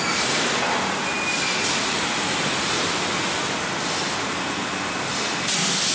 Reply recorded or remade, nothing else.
recorded